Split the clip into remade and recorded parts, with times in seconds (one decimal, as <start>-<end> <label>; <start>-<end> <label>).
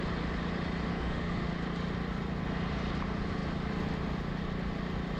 0.0-0.9 recorded; 0.9-1.5 remade; 1.5-5.2 recorded